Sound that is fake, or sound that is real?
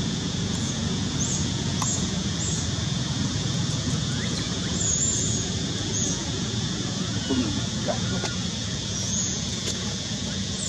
fake